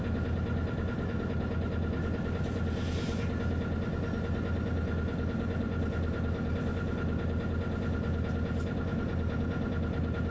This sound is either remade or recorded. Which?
recorded